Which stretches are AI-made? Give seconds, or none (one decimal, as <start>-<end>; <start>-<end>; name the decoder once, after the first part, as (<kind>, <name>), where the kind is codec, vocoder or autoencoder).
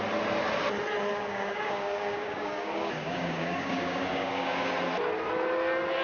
1.1-4.7 (codec, DAC)